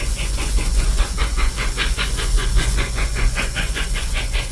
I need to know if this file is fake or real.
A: fake